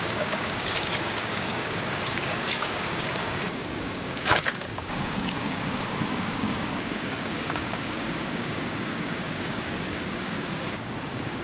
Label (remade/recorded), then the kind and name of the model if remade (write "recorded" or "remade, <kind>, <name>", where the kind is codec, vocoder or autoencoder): remade, codec, DAC